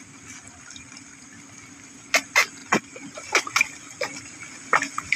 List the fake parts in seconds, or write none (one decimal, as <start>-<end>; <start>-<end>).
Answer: none